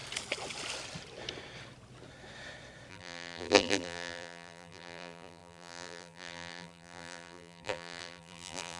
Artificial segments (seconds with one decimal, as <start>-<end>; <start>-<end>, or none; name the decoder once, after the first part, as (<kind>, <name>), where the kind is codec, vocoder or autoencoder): 2.9-8.8 (vocoder, BigVGAN v2)